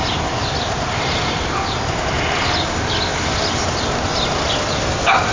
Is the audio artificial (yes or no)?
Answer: no